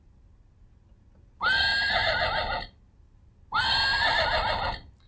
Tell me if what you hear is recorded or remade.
recorded